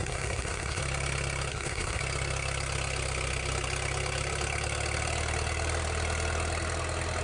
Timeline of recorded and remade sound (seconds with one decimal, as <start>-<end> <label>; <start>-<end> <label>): 0.0-0.8 remade; 0.8-1.5 recorded; 1.5-2.0 remade; 2.0-7.2 recorded